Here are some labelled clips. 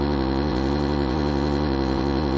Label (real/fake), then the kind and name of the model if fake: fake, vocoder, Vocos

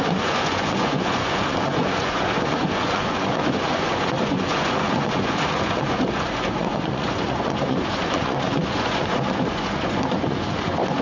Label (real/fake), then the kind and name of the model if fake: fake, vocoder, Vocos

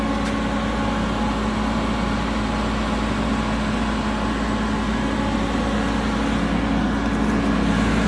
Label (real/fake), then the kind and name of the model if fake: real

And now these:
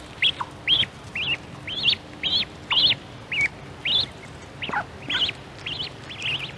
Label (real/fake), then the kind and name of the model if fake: real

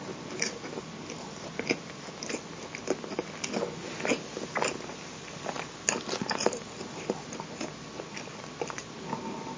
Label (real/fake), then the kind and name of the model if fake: real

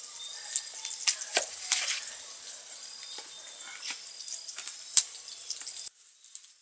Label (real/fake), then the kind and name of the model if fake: real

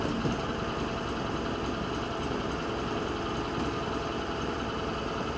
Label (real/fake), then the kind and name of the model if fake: real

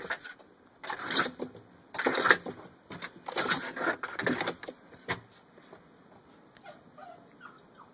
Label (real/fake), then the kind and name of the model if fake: real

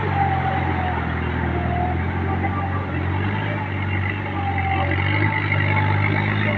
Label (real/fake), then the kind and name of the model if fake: real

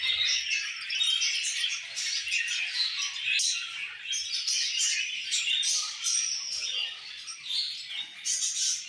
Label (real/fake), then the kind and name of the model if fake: real